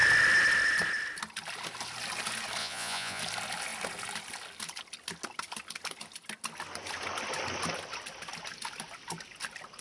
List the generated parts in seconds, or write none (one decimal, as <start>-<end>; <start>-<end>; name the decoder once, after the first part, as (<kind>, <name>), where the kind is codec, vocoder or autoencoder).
2.6-3.2 (vocoder, Vocos)

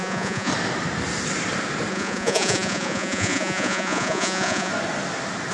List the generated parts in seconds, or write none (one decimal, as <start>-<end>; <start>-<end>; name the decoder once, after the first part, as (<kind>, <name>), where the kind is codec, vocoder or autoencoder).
0.0-0.5 (vocoder, Vocos); 1.9-4.7